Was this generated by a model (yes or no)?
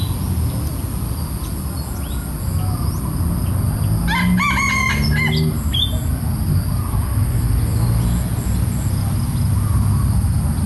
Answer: no